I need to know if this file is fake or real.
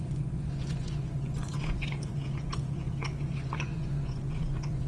fake